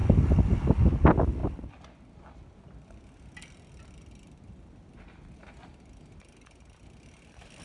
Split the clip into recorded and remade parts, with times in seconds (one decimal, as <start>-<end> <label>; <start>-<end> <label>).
0.0-7.6 recorded